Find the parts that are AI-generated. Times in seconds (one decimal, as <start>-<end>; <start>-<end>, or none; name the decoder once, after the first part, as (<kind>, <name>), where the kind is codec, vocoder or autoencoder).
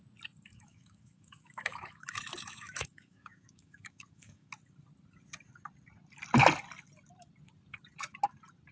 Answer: 0.5-4.5 (autoencoder, DAC-VAE)